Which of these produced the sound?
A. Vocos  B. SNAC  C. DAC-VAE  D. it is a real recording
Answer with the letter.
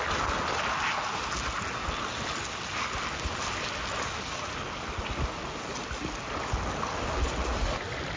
D